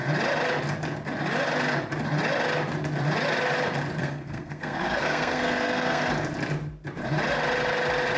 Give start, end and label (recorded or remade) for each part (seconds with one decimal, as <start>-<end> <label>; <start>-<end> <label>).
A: 0.0-4.0 recorded; 4.0-6.0 remade; 6.0-8.2 recorded